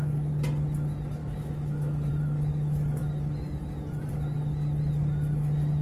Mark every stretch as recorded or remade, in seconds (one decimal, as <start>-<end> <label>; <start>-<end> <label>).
0.0-1.2 recorded; 1.2-2.1 remade; 2.1-5.8 recorded